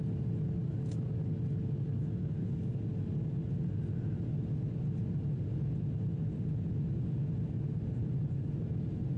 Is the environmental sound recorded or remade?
recorded